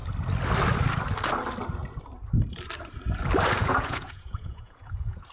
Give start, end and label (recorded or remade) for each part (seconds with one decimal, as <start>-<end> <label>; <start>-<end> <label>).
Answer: 0.0-3.6 recorded; 3.6-5.3 remade